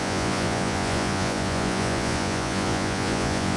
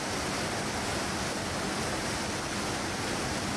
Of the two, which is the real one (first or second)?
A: second